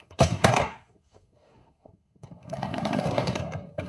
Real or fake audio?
fake